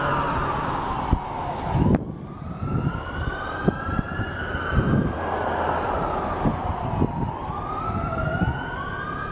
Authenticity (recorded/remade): recorded